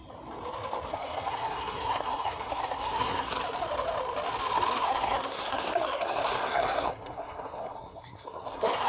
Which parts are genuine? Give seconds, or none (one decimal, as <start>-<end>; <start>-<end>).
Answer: 0.0-0.9; 3.4-4.8